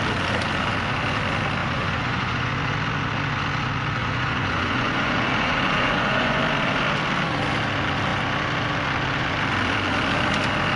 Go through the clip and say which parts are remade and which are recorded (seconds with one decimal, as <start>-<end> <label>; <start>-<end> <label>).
0.0-1.6 recorded; 1.6-2.5 remade; 2.5-4.0 recorded; 4.0-6.4 remade; 6.4-10.8 recorded